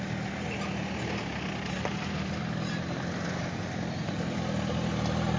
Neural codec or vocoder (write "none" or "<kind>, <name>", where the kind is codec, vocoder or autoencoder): none